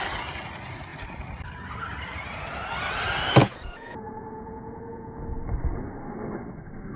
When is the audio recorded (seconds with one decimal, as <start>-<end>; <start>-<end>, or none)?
0.0-3.4; 5.2-7.0